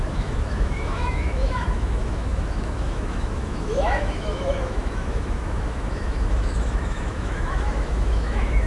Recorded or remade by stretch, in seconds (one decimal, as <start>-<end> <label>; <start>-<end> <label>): 0.0-8.7 remade